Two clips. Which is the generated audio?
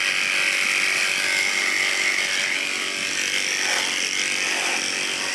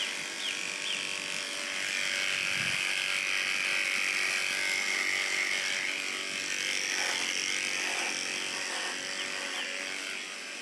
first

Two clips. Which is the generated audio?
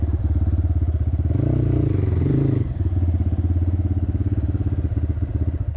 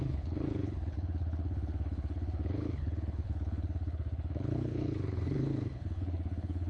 second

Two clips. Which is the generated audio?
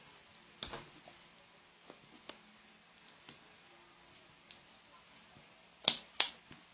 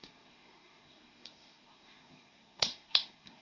second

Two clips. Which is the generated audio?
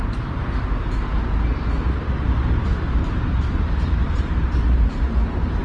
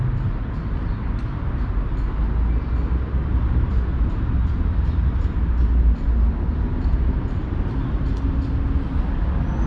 first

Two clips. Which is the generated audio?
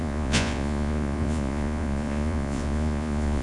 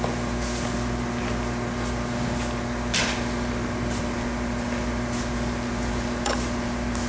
first